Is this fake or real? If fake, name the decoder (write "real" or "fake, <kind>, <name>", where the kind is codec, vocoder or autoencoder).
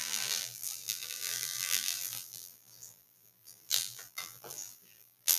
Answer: fake, vocoder, BigVGAN v2